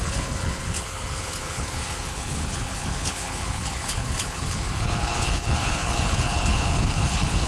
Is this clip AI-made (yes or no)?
yes